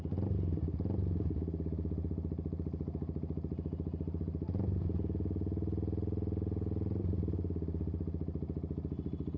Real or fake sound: real